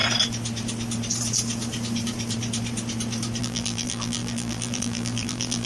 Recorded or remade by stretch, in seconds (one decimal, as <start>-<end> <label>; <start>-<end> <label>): 0.0-3.4 recorded; 3.4-5.7 remade